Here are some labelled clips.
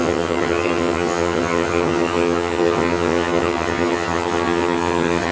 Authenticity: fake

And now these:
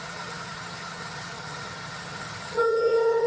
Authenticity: fake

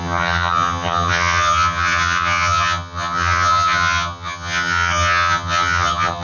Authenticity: fake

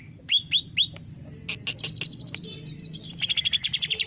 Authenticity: real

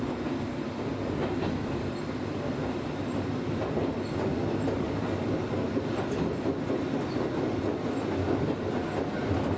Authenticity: real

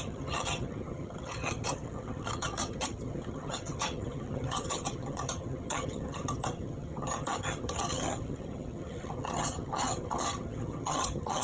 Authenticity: fake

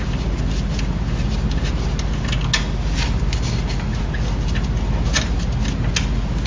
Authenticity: real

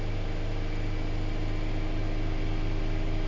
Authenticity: real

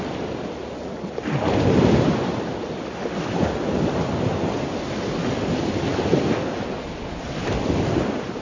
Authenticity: real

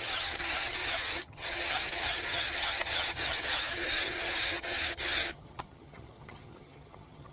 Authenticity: fake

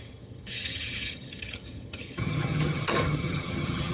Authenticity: fake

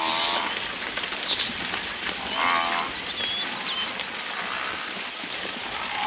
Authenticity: real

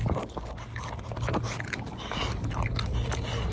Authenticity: real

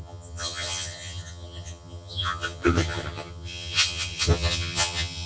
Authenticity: fake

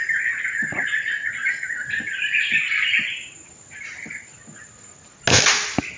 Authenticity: real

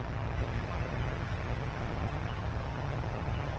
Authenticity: fake